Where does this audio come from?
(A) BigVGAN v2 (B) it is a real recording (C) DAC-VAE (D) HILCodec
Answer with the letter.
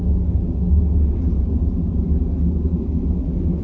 B